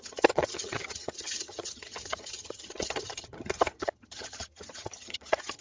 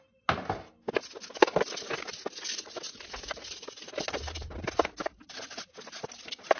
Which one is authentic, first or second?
second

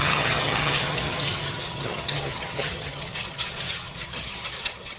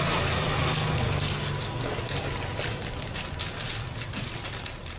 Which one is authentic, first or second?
second